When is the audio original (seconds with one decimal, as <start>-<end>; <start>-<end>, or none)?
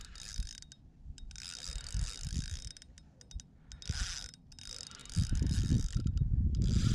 0.0-6.9